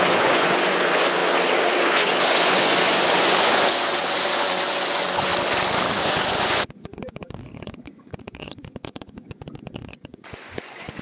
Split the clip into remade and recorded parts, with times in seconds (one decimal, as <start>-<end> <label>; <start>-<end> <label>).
0.0-1.2 remade; 1.2-1.8 recorded; 1.8-5.3 remade; 5.3-6.0 recorded; 6.0-11.0 remade